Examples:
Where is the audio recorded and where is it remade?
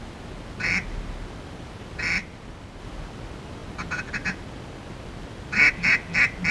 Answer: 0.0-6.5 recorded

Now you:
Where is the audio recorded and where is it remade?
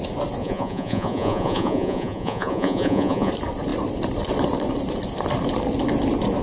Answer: 0.0-0.4 recorded; 0.4-3.3 remade; 3.3-6.4 recorded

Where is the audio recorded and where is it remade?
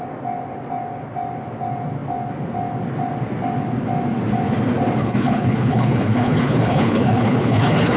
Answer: 0.0-5.0 recorded; 5.0-8.0 remade